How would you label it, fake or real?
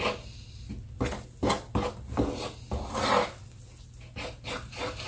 real